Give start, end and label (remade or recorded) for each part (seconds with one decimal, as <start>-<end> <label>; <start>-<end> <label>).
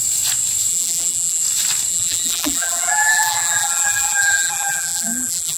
0.0-0.7 recorded; 0.7-1.4 remade; 1.4-1.9 recorded; 1.9-5.6 remade